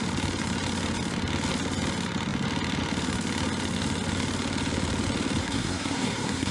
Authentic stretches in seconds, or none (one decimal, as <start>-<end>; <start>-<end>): 0.0-5.4